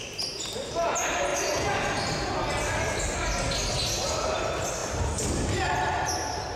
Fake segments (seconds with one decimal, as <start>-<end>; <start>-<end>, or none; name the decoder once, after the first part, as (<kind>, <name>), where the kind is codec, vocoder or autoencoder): none